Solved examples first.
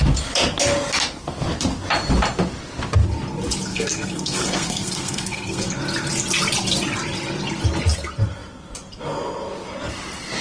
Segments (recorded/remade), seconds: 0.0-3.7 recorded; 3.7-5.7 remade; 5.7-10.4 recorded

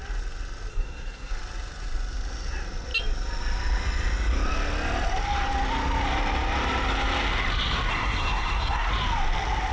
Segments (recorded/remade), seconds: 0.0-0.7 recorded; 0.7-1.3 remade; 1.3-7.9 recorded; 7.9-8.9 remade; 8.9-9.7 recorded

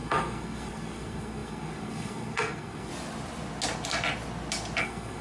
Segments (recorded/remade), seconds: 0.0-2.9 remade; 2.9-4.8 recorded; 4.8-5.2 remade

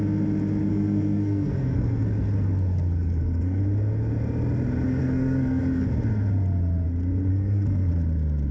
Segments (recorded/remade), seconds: 0.0-0.7 recorded; 0.7-3.6 remade; 3.6-5.0 recorded; 5.0-5.6 remade; 5.6-7.3 recorded; 7.3-7.9 remade; 7.9-8.5 recorded

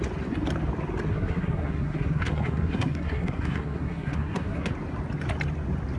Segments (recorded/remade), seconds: 0.0-1.1 recorded; 1.1-4.7 remade; 4.7-6.0 recorded

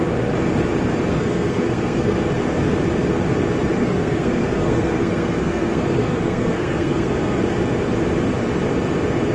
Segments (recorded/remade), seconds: 0.0-1.1 recorded; 1.1-2.2 remade; 2.2-3.7 recorded; 3.7-7.4 remade; 7.4-9.3 recorded